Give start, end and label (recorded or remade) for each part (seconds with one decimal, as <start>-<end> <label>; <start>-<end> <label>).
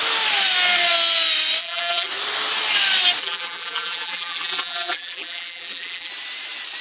0.0-1.6 recorded; 1.6-2.1 remade; 2.1-3.2 recorded; 3.2-6.1 remade; 6.1-6.8 recorded